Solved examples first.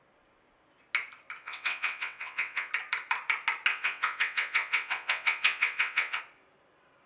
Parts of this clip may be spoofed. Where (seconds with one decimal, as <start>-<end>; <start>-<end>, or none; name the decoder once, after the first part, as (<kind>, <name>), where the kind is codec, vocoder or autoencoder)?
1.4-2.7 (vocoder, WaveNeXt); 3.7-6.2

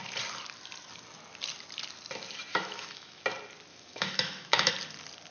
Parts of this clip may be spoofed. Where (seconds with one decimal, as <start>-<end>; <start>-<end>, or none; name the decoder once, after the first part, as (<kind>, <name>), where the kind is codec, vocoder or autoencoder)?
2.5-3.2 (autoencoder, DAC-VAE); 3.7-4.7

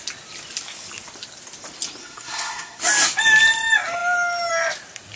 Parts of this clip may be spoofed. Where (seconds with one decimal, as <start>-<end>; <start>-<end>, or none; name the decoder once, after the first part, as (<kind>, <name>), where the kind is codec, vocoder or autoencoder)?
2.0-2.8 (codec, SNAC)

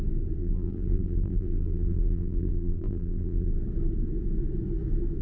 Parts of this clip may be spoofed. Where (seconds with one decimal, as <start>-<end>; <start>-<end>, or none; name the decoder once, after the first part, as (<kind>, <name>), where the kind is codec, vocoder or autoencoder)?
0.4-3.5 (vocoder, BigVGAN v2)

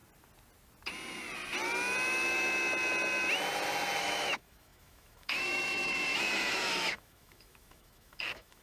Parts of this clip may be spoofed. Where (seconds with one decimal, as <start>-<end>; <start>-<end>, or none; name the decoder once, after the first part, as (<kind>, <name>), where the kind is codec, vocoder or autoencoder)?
4.0-8.6 (autoencoder, DAC-VAE)